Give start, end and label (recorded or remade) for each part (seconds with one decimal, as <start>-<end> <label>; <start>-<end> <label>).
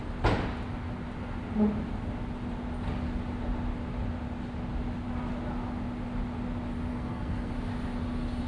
0.0-6.9 recorded; 6.9-7.5 remade; 7.5-8.5 recorded